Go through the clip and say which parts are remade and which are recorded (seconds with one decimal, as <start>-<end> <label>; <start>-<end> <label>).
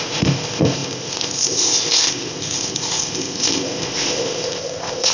0.0-5.1 remade